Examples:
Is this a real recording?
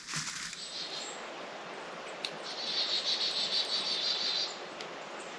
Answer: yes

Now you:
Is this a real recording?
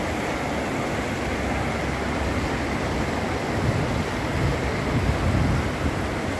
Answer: yes